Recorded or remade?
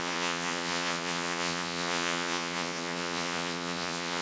remade